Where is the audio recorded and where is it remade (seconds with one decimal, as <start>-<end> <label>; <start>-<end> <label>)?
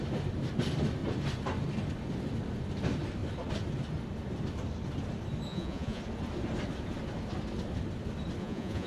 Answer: 0.0-5.5 recorded; 5.5-6.0 remade; 6.0-8.4 recorded; 8.4-8.9 remade